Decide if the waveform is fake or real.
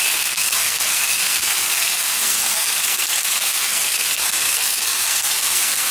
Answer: fake